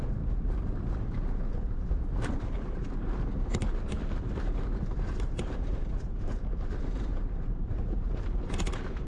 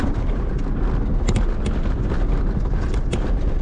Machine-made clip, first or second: first